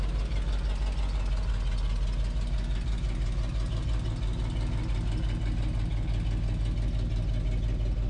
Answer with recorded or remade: recorded